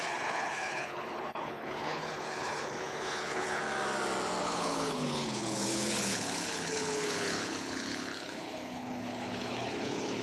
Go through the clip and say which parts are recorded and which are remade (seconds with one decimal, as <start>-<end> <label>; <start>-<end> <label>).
0.0-3.6 remade; 3.6-4.4 recorded; 4.4-10.2 remade